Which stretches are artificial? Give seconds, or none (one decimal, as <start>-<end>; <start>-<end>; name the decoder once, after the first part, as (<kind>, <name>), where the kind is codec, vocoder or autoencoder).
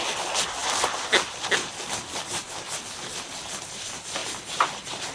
none